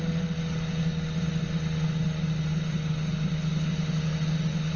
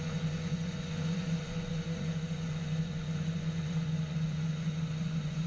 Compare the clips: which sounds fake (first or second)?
second